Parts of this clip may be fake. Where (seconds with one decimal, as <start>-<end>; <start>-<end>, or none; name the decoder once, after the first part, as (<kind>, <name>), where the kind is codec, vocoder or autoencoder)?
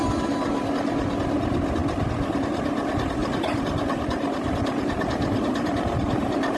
3.2-6.6 (vocoder, BigVGAN v2)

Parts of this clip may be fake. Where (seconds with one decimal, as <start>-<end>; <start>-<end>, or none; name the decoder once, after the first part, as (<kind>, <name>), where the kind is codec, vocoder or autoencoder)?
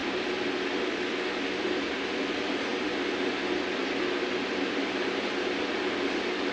none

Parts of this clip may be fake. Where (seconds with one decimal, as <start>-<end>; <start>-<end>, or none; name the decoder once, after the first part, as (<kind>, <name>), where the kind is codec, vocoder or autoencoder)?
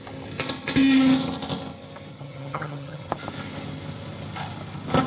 2.1-3.1 (vocoder, HiFi-GAN)